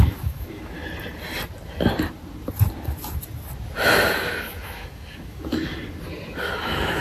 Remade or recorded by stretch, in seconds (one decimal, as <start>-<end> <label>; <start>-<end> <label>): 0.0-0.8 remade; 0.8-4.2 recorded; 4.2-5.7 remade; 5.7-6.4 recorded; 6.4-7.0 remade